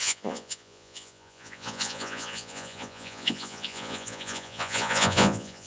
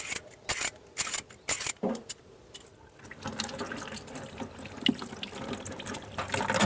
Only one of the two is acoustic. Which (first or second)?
second